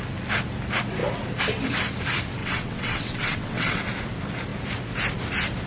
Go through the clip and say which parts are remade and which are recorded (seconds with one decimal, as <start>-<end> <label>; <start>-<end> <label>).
0.0-2.4 recorded; 2.4-3.8 remade; 3.8-5.7 recorded